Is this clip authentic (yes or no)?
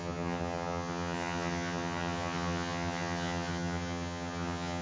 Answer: no